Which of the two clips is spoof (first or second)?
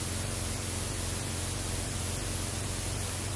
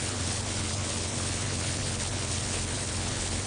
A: second